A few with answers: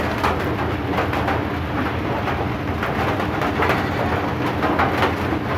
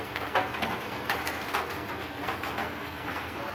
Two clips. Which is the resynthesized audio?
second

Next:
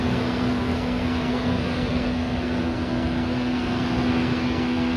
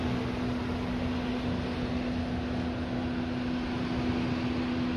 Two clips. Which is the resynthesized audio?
first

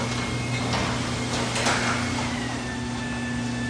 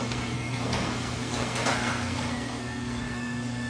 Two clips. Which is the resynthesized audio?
second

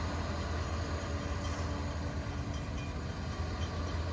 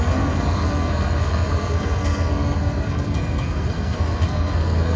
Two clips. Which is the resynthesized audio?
second